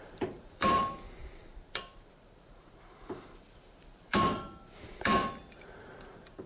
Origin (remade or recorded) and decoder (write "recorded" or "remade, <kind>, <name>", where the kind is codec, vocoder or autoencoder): remade, vocoder, BigVGAN v2